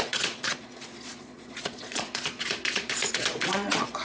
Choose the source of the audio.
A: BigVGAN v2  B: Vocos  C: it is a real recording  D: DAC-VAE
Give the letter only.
B